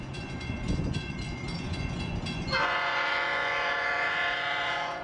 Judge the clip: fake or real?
fake